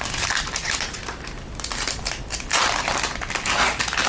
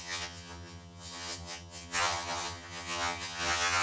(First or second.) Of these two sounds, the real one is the first